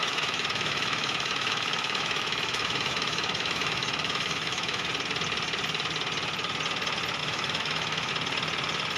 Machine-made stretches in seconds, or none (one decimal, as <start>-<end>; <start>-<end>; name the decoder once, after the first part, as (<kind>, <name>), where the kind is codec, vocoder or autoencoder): 0.0-4.9 (autoencoder, DAC-VAE); 7.2-8.1